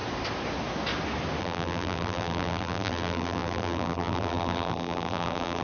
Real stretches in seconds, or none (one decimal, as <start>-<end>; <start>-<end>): 0.0-1.4